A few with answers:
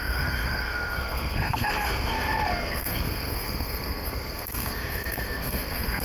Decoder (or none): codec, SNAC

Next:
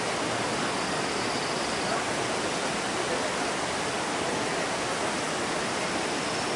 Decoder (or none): none